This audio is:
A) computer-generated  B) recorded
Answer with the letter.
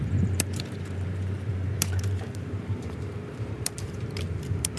A